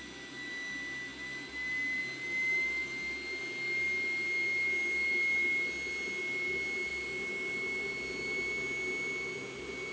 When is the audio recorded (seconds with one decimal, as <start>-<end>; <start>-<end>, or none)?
0.0-9.9